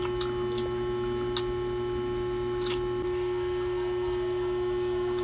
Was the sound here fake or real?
real